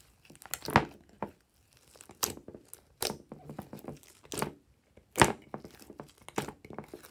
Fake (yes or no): no